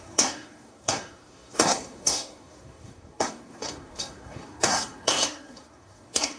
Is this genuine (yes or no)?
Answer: no